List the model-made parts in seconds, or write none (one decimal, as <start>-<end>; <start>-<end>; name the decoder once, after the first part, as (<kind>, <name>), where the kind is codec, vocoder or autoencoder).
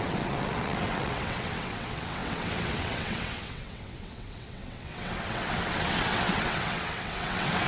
0.0-7.7 (vocoder, WaveNeXt)